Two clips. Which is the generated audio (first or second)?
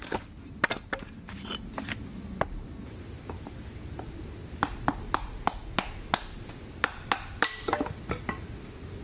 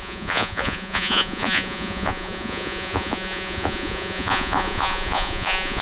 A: second